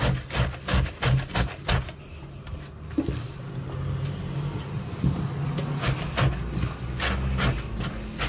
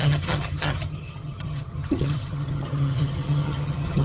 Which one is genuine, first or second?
first